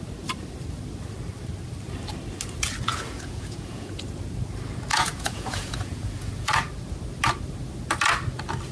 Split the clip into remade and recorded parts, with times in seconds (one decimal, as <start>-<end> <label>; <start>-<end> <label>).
0.0-2.9 recorded; 2.9-4.0 remade; 4.0-4.9 recorded; 4.9-6.5 remade; 6.5-8.7 recorded